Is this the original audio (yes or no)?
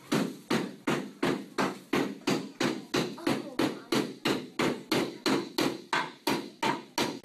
yes